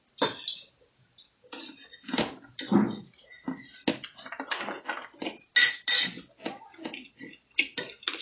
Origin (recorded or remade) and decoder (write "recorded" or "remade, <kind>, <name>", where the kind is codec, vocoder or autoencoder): recorded